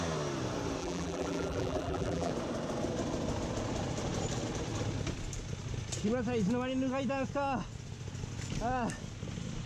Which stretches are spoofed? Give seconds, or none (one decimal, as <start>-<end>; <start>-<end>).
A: 0.8-2.3

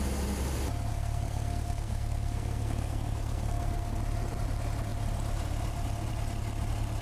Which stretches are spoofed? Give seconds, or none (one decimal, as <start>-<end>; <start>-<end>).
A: 0.9-4.0

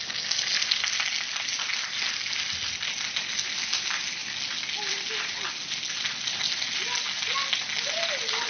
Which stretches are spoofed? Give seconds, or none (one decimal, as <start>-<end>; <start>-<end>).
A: none

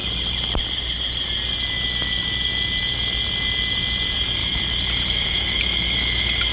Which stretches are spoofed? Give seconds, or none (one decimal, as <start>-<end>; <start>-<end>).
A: 4.4-5.6

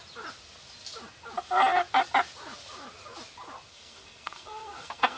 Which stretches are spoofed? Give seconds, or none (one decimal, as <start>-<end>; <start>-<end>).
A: 3.7-5.2

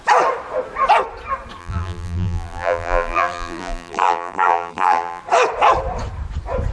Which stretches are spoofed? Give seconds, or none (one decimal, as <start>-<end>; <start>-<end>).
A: 1.6-5.2

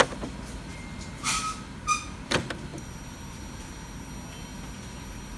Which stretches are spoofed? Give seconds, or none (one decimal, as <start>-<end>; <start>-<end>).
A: 0.7-1.3; 2.7-4.1; 4.5-5.4

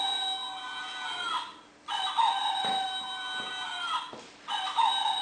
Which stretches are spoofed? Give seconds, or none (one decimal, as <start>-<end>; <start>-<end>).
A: none